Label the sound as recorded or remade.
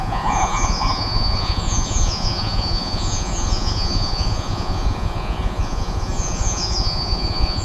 remade